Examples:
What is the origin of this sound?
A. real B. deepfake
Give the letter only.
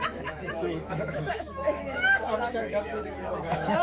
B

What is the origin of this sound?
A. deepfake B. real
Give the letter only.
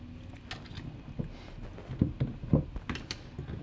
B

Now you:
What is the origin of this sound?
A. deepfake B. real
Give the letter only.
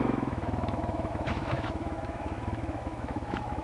A